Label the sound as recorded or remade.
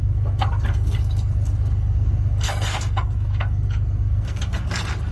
remade